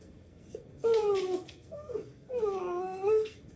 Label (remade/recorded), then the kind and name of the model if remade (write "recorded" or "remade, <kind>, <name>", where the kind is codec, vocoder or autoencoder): remade, codec, SNAC